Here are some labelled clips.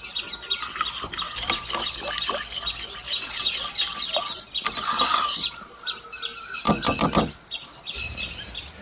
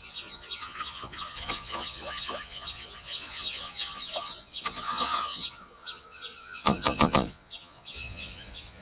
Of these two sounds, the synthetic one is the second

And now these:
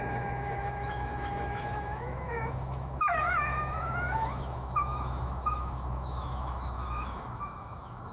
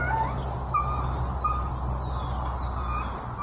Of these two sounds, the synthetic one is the first